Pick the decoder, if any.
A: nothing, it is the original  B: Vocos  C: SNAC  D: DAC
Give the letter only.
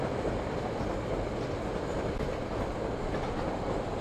A